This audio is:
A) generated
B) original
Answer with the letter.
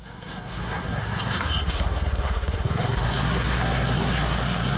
A